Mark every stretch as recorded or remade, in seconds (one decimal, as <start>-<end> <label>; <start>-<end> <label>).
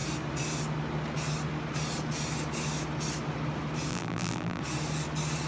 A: 0.0-3.9 recorded; 3.9-4.6 remade; 4.6-5.5 recorded